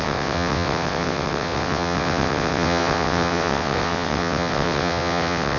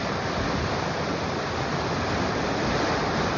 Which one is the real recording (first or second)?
second